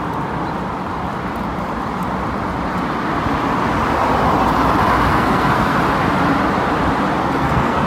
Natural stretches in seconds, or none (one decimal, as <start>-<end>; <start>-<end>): 0.0-5.1; 5.8-7.2